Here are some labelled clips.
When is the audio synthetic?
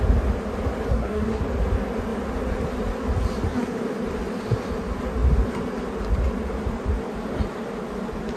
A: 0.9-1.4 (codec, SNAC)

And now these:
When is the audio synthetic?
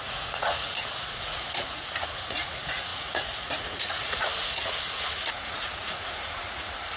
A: 0.0-7.0 (vocoder, Vocos)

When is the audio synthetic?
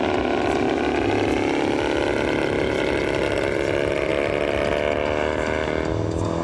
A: none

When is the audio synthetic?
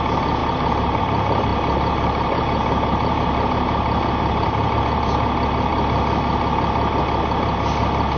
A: 0.4-1.0 (vocoder, BigVGAN v2); 1.5-4.8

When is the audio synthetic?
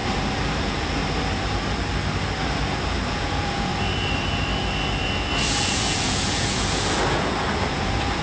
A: 0.6-1.0 (vocoder, Vocos); 3.1-3.7; 5.5-8.2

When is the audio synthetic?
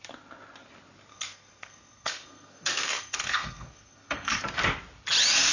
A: 1.1-4.4 (codec, SNAC)